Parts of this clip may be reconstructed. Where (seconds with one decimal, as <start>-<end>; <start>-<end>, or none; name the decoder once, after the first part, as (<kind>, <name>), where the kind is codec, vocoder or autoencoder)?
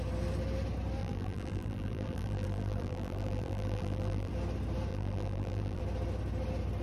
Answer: 1.0-4.3 (vocoder, BigVGAN v2); 4.9-5.8